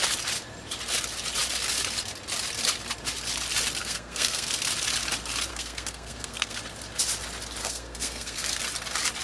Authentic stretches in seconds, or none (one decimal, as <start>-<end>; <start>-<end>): 0.0-3.8; 4.5-5.5; 6.6-7.6; 8.6-9.2